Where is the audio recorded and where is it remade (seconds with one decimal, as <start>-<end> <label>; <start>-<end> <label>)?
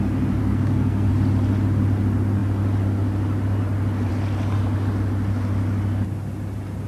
0.0-0.4 recorded; 0.4-1.1 remade; 1.1-6.9 recorded